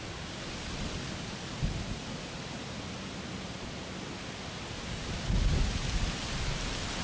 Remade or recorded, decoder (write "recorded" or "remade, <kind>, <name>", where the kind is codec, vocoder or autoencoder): recorded